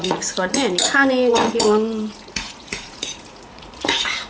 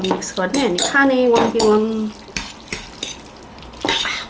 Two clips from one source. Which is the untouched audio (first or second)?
second